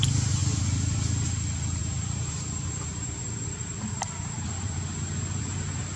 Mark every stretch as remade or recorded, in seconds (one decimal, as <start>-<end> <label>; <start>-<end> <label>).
0.0-1.8 recorded; 1.8-5.4 remade; 5.4-6.0 recorded